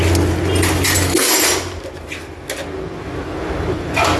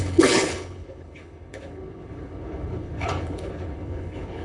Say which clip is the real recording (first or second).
first